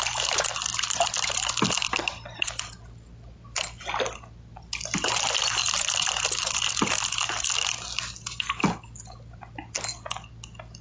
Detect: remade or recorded recorded